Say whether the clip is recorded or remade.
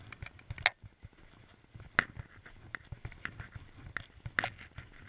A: recorded